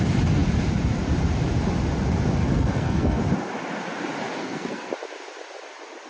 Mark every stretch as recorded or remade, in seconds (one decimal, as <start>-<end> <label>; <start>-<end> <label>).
0.0-2.4 recorded; 2.4-3.2 remade; 3.2-4.4 recorded; 4.4-4.9 remade; 4.9-6.1 recorded